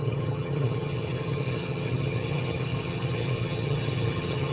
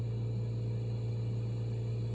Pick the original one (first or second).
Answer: second